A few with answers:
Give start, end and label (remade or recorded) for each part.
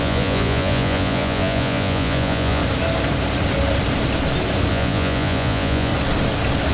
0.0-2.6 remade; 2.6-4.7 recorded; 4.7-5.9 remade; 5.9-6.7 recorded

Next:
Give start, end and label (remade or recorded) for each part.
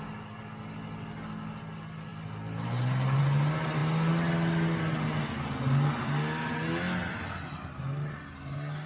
0.0-8.9 recorded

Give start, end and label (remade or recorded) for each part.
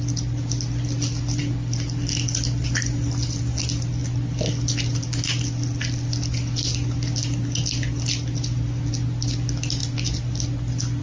0.0-11.0 recorded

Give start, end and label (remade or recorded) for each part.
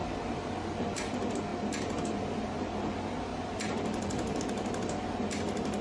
0.0-0.8 remade; 0.8-3.3 recorded; 3.3-4.4 remade; 4.4-5.8 recorded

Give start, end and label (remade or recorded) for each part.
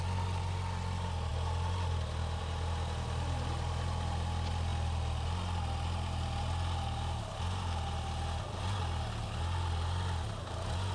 0.0-10.9 recorded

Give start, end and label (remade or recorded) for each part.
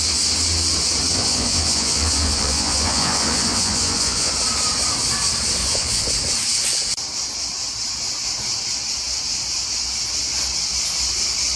0.0-1.1 recorded; 1.1-4.3 remade; 4.3-5.6 recorded; 5.6-6.1 remade; 6.1-11.6 recorded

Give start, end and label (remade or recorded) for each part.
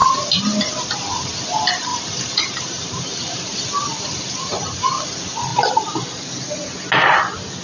0.0-1.9 recorded; 1.9-3.6 remade; 3.6-5.5 recorded; 5.5-6.3 remade; 6.3-7.6 recorded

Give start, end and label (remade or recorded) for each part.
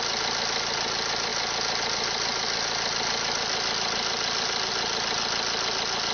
0.0-6.1 recorded